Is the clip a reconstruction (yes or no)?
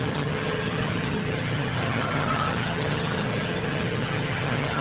yes